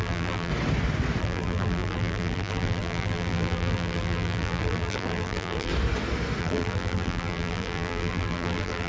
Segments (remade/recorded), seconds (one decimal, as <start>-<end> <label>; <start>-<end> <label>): 0.0-0.5 remade; 0.5-1.2 recorded; 1.2-5.7 remade; 5.7-6.4 recorded; 6.4-8.9 remade